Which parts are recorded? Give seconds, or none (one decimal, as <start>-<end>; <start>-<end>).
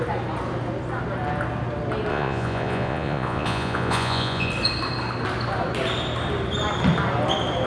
0.0-2.1; 4.5-7.7